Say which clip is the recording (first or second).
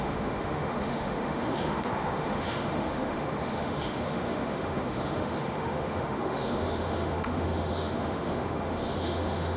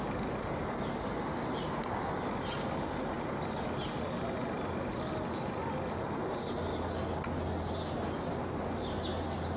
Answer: second